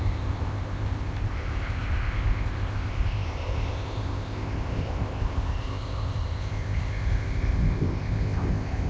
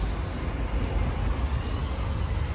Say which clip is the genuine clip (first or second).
second